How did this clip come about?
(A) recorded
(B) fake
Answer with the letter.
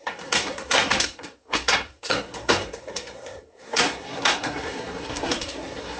B